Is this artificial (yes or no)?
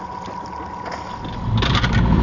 no